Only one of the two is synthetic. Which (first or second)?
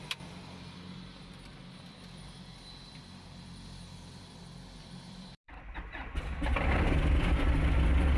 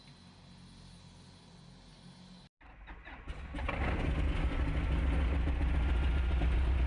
first